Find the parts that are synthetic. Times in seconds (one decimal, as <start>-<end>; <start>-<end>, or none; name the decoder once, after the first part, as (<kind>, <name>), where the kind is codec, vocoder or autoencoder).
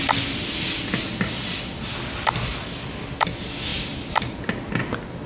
3.7-4.4 (vocoder, BigVGAN v2)